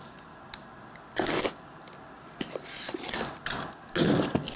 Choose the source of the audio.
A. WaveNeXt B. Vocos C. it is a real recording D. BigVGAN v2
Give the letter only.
C